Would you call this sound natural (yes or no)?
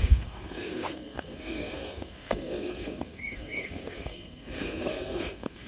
no